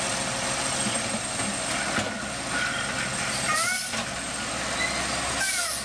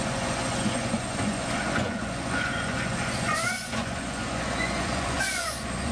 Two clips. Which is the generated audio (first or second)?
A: second